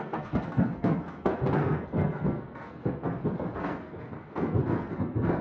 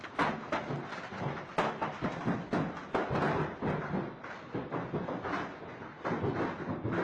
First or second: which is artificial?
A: first